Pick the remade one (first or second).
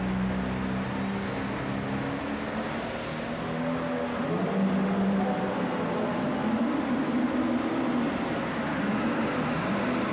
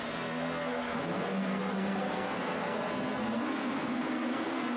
second